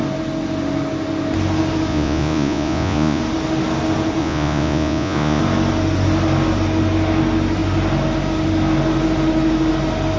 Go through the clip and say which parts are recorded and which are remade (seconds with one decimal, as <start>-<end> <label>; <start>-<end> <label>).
0.0-1.9 recorded; 1.9-3.2 remade; 3.2-4.2 recorded; 4.2-5.4 remade; 5.4-10.2 recorded